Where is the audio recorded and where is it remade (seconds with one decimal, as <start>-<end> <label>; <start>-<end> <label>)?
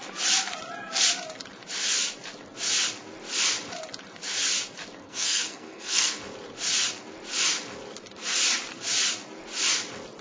0.0-5.0 recorded; 5.0-6.2 remade; 6.2-10.2 recorded